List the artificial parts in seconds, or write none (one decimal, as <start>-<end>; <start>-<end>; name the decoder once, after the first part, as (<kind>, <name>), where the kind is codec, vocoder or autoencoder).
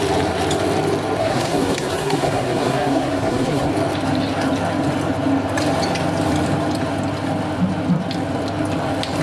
1.2-3.7 (codec, SNAC)